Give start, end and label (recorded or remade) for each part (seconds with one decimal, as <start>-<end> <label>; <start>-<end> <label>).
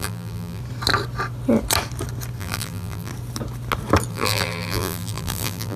0.0-0.6 remade; 0.6-2.4 recorded; 2.4-3.1 remade; 3.1-4.1 recorded; 4.1-5.8 remade